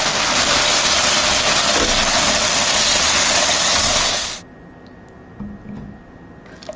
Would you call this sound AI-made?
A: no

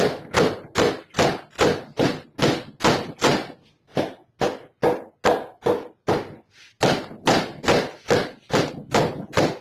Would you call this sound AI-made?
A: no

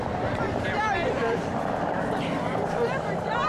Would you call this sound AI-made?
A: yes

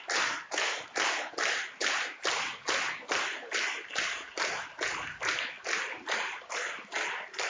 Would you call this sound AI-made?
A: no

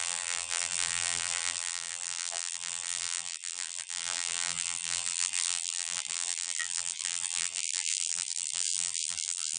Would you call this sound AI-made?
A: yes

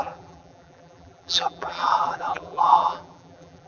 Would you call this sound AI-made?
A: yes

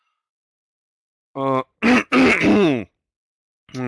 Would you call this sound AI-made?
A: no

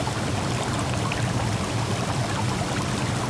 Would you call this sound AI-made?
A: no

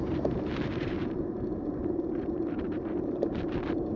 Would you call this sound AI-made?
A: yes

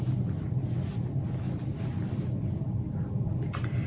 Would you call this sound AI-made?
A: no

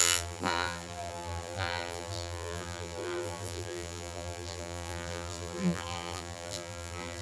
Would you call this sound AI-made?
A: yes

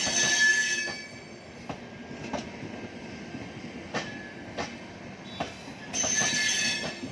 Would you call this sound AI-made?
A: no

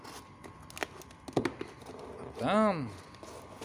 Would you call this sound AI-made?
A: no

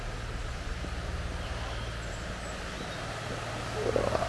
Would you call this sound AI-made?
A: no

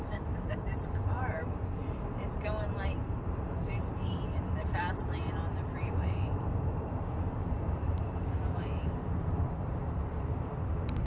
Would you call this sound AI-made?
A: yes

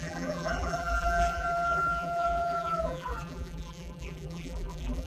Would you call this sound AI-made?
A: yes